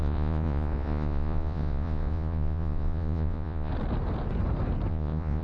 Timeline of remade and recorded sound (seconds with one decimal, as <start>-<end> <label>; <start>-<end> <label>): 0.0-3.7 remade; 3.7-4.9 recorded; 4.9-5.4 remade